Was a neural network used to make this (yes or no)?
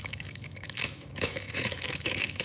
yes